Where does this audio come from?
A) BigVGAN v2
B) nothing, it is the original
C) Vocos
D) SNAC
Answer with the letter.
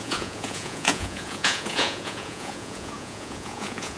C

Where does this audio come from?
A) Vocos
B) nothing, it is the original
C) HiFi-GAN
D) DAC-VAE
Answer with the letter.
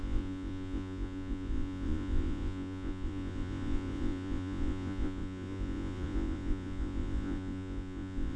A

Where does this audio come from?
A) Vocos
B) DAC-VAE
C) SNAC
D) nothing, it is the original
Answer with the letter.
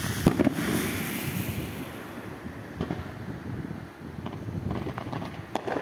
D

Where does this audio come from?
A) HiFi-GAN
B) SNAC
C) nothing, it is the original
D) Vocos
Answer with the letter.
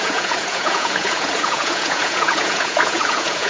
D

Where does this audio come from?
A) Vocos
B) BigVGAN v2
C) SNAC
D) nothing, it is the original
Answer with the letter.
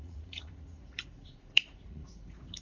A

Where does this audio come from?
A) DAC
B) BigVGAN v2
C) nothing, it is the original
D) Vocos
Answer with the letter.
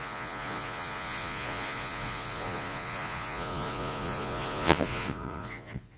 D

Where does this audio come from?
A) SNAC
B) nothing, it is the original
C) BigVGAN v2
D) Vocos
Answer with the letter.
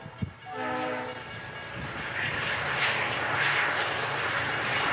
B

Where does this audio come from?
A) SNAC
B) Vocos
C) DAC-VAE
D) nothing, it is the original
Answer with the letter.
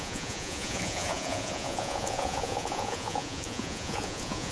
B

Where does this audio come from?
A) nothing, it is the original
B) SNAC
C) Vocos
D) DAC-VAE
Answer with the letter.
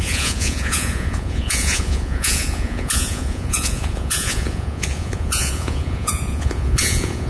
C